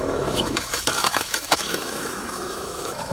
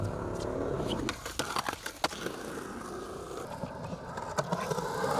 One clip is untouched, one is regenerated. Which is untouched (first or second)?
second